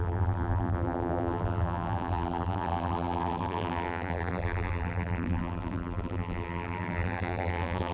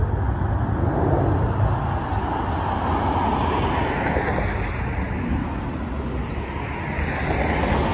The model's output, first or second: first